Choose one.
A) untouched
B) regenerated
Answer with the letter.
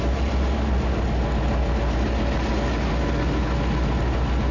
A